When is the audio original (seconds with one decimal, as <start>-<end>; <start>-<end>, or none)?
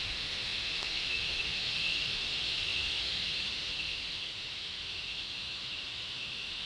none